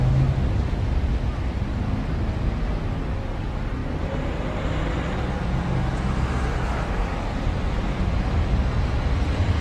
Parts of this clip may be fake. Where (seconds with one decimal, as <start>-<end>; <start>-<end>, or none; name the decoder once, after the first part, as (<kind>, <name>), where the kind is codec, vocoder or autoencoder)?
3.8-4.9 (vocoder, BigVGAN v2)